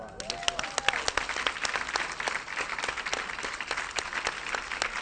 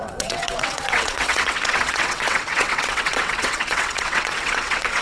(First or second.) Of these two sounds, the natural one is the first